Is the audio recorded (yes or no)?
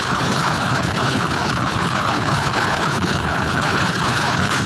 no